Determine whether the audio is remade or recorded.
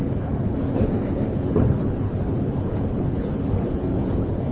remade